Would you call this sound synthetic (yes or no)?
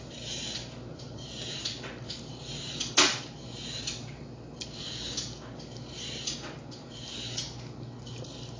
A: no